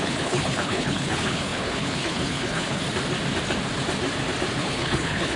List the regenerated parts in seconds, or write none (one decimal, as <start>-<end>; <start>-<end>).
0.0-2.8; 4.6-5.4